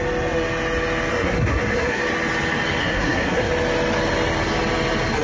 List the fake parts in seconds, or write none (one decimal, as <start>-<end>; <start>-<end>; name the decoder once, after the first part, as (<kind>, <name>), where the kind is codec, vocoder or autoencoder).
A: 1.1-2.0 (codec, SNAC); 2.8-3.5